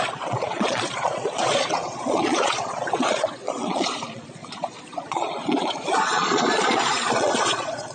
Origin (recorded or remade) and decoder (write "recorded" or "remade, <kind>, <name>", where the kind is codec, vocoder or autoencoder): remade, vocoder, Vocos